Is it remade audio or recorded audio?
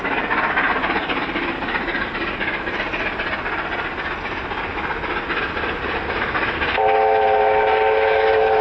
recorded